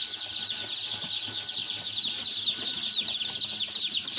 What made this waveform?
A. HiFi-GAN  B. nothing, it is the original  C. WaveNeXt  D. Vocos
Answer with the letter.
B